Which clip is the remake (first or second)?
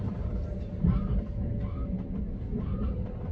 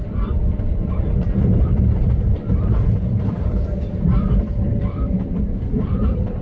second